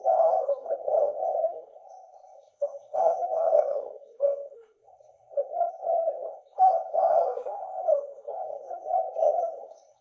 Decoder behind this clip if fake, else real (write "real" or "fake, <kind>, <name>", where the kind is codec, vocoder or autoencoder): fake, codec, SNAC